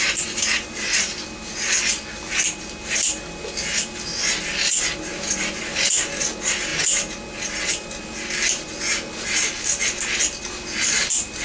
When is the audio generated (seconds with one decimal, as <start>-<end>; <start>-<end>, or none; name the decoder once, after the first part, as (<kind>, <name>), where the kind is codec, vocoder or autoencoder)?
none